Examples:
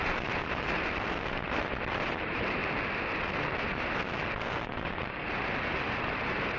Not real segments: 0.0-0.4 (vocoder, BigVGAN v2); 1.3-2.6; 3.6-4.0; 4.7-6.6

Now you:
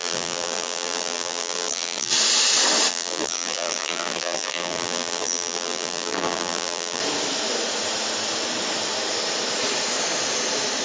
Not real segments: 0.0-2.1 (vocoder, BigVGAN v2); 2.9-7.0

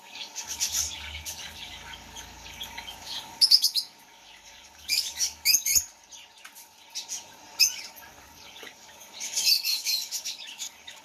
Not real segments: 0.0-5.7 (codec, DAC); 7.6-11.0